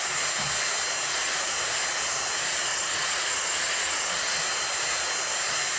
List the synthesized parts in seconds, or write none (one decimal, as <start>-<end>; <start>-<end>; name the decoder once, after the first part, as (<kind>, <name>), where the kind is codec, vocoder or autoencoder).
1.1-1.6 (vocoder, Vocos); 2.7-4.4